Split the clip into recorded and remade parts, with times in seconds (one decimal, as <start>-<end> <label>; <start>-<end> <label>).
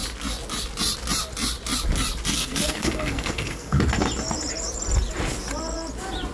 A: 0.0-2.3 recorded; 2.3-3.8 remade; 3.8-6.3 recorded